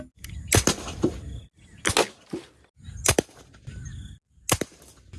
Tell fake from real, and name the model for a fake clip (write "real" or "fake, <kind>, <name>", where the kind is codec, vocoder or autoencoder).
real